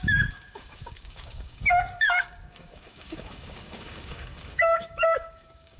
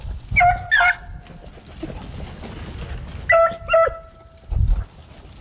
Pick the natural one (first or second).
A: second